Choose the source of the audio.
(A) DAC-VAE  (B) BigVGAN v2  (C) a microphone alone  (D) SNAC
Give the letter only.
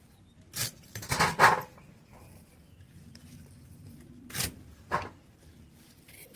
C